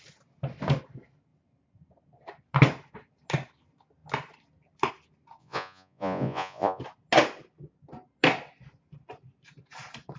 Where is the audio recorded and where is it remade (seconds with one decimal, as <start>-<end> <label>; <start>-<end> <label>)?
0.0-5.4 recorded; 5.4-6.8 remade; 6.8-10.2 recorded